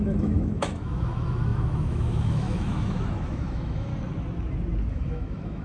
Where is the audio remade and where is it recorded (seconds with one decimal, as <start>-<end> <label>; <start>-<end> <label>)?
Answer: 0.0-3.9 remade; 3.9-4.9 recorded; 4.9-5.6 remade